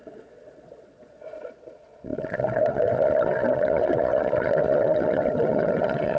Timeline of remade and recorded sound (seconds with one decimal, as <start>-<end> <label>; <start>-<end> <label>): 0.0-6.2 remade